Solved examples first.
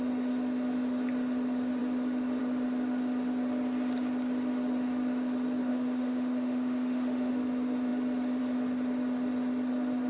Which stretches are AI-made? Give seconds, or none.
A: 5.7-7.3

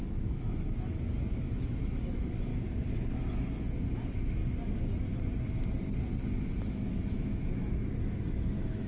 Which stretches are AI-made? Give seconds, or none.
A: 0.0-2.5; 3.9-4.4; 6.6-8.9

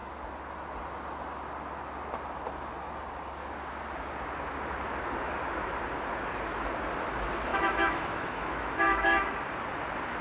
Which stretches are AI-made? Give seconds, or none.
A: 7.5-9.3

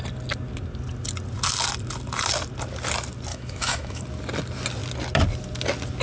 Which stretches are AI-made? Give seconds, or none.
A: 3.3-4.0